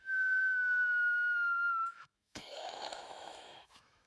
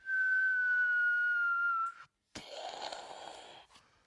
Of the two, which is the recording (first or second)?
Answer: second